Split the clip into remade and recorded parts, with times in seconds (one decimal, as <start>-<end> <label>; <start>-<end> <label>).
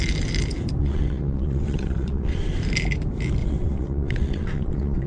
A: 0.0-0.8 recorded; 0.8-2.6 remade; 2.6-3.4 recorded; 3.4-5.1 remade